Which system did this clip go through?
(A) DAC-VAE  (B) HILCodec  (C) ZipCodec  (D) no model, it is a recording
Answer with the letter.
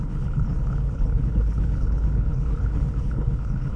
B